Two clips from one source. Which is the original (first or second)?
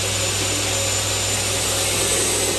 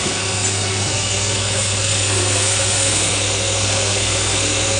first